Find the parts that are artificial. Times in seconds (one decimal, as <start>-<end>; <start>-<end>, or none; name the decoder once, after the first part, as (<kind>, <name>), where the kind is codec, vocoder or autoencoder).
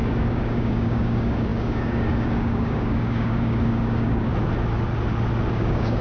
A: 0.0-4.3 (codec, DAC); 5.5-6.0